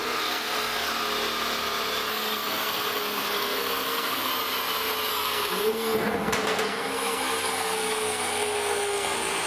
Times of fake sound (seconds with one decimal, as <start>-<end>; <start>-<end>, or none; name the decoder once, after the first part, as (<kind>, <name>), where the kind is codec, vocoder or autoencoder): 0.0-0.9 (codec, SNAC); 2.1-4.3; 5.1-9.5